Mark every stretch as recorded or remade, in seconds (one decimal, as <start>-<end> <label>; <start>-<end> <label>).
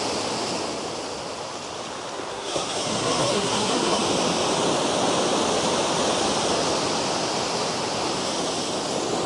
0.0-2.3 recorded; 2.3-4.0 remade; 4.0-9.3 recorded